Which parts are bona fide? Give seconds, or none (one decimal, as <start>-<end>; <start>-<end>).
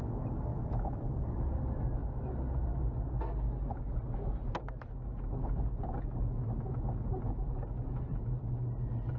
0.0-0.5; 1.6-9.2